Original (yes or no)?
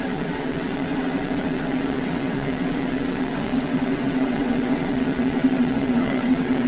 no